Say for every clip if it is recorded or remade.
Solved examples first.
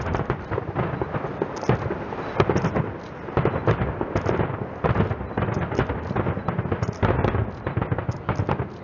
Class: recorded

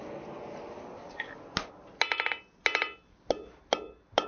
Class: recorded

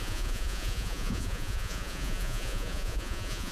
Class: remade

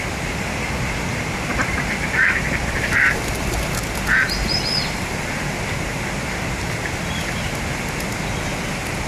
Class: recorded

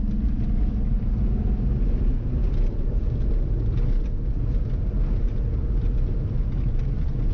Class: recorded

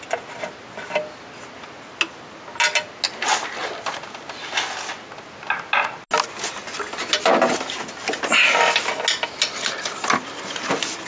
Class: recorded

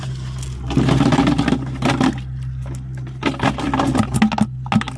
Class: recorded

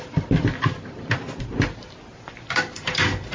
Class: recorded